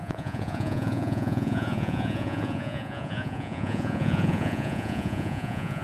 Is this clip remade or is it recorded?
remade